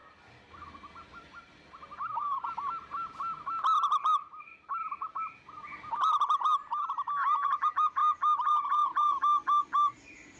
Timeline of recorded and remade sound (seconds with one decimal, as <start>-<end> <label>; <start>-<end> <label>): 0.0-10.4 recorded